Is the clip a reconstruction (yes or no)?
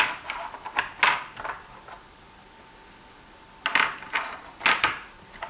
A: no